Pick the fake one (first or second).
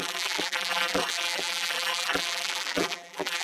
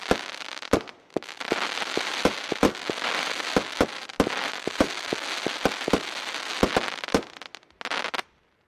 first